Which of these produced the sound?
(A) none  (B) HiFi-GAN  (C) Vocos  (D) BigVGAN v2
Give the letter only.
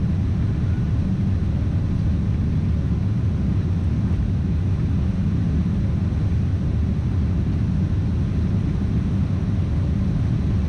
A